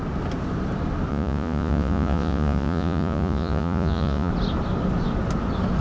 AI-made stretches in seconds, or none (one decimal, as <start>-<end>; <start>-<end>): 1.1-4.3